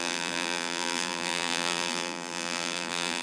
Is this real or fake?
fake